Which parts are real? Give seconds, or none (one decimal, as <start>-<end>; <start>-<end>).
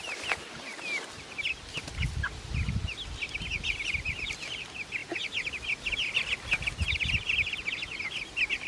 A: 0.0-8.7